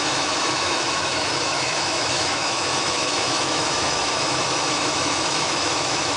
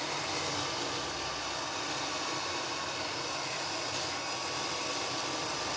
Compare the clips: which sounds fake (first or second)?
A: first